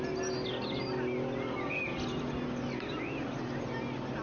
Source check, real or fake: real